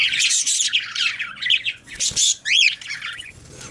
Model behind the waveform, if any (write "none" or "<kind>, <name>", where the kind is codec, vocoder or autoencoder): vocoder, Vocos